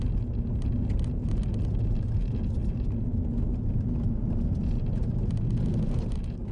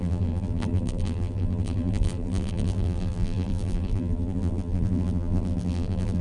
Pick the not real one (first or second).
second